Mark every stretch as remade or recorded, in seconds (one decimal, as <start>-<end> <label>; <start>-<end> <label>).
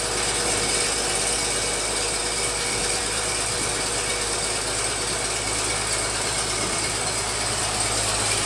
0.0-8.5 recorded